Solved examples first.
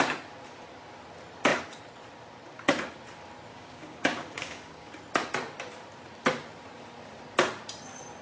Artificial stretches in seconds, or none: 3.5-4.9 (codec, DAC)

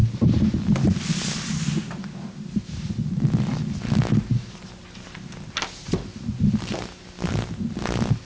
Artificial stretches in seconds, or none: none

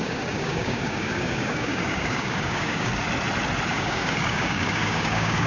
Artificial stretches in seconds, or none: 0.0-2.9 (codec, DAC); 3.7-5.5

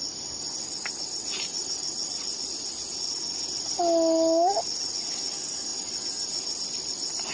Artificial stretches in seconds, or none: none